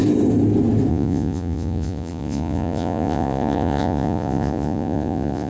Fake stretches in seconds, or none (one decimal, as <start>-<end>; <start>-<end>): 0.9-5.5